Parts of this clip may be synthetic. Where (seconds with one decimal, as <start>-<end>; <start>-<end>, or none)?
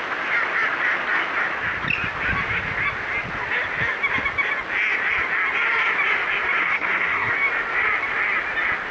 6.6-7.3